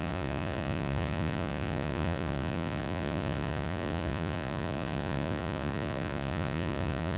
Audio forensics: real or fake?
fake